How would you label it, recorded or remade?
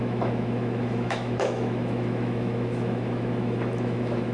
remade